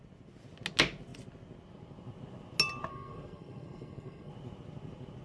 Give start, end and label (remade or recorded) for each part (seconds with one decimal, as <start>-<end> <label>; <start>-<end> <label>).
0.0-2.9 recorded; 2.9-4.3 remade; 4.3-5.2 recorded